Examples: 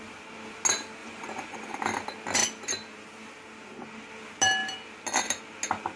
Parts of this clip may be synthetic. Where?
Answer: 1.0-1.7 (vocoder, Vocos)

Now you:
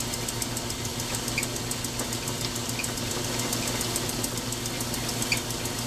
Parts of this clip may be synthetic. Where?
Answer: none

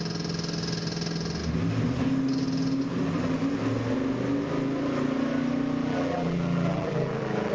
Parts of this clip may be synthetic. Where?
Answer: 5.8-7.5 (vocoder, BigVGAN v2)

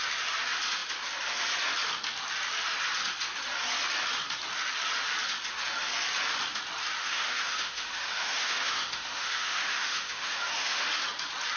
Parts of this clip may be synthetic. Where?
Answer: 7.0-10.8 (autoencoder, DAC-VAE)

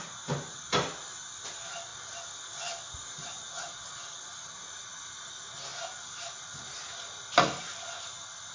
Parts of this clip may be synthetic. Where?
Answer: none

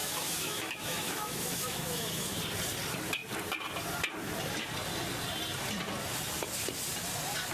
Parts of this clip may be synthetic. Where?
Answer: 0.0-2.4 (autoencoder, DAC-VAE)

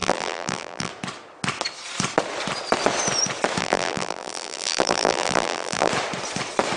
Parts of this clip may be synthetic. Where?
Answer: 0.0-0.9 (vocoder, BigVGAN v2); 3.6-5.9